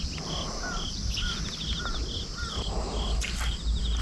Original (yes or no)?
yes